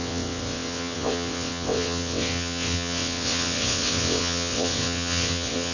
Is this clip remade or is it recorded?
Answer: remade